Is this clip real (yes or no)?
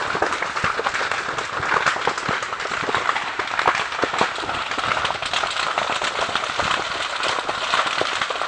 yes